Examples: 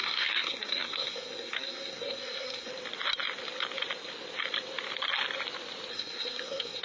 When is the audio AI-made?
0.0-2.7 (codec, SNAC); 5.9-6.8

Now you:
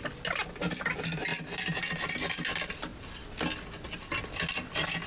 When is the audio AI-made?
none

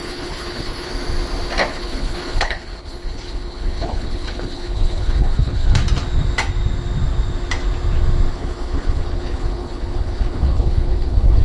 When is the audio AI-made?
0.0-0.9 (codec, HILCodec); 1.7-5.8; 8.3-11.4

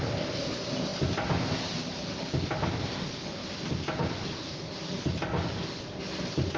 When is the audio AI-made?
none